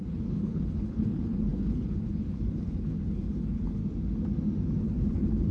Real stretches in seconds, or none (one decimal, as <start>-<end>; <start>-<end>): 3.8-4.8